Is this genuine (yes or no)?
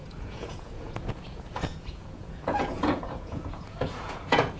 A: no